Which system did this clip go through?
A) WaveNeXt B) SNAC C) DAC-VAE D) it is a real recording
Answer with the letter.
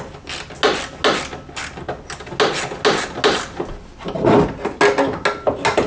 D